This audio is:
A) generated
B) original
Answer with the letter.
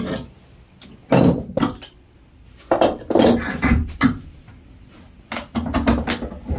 B